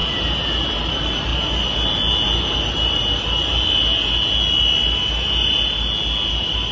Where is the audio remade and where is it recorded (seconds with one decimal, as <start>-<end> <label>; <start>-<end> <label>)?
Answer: 0.0-6.7 recorded